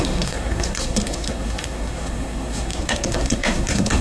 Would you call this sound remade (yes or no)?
yes